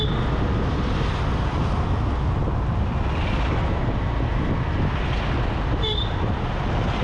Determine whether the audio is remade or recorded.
recorded